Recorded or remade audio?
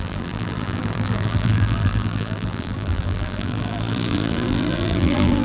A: remade